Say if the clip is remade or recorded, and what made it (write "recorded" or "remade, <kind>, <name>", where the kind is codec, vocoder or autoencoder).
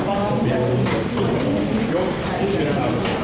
recorded